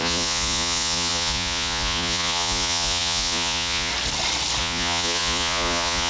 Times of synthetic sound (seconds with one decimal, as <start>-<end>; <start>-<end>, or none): 0.0-3.9; 4.6-6.1